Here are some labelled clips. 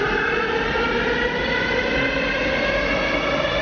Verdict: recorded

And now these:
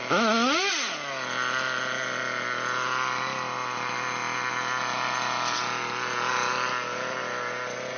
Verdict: recorded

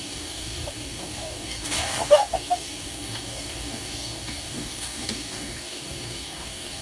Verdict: remade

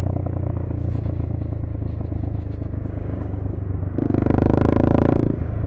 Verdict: remade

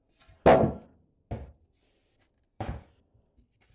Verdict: recorded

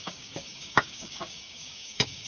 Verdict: remade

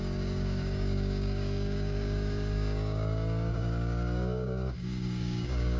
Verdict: remade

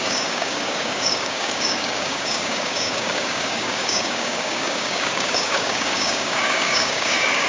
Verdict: remade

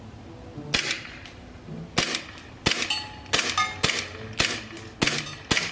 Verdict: recorded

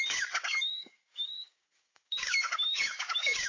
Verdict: remade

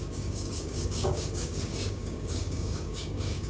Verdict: remade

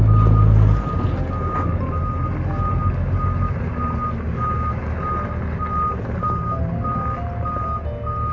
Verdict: recorded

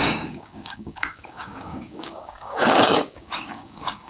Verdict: remade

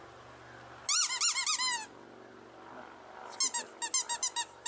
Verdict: recorded